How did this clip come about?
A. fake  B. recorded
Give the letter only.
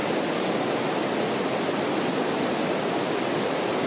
B